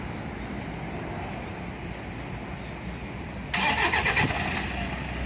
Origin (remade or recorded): recorded